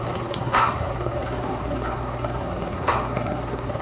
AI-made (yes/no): yes